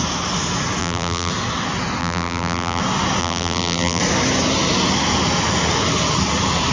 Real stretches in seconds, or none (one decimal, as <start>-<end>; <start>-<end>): 0.0-0.8; 1.3-2.0; 2.8-3.2; 4.0-6.7